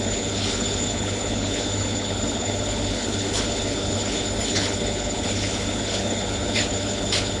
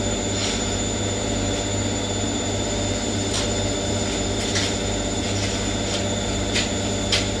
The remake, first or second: first